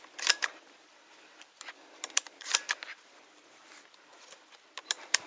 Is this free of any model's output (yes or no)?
no